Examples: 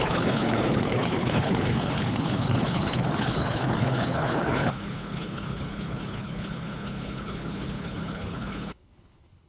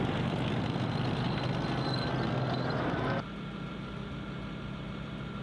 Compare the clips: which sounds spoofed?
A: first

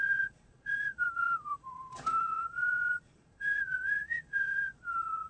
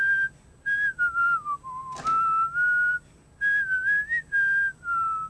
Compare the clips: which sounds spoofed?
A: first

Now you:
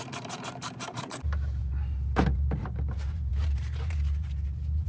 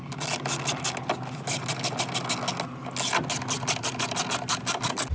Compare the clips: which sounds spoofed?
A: first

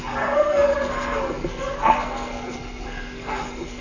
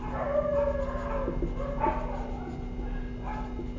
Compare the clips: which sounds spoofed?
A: first